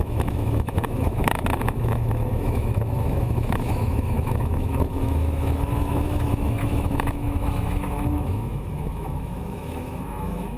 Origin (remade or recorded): remade